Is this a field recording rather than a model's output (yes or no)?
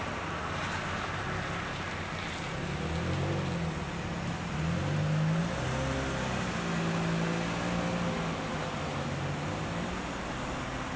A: yes